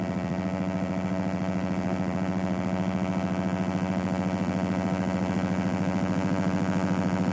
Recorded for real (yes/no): no